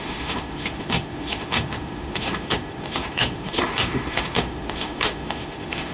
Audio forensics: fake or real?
fake